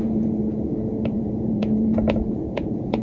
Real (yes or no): no